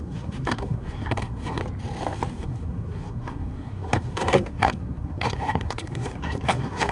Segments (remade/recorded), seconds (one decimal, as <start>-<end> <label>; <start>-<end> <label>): 0.0-1.6 remade; 1.6-2.3 recorded; 2.3-6.9 remade